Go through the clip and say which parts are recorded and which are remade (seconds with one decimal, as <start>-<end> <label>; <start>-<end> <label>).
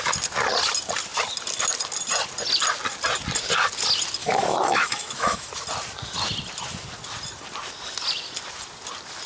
0.0-4.2 recorded; 4.2-5.5 remade; 5.5-9.3 recorded